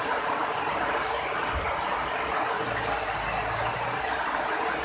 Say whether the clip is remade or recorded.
recorded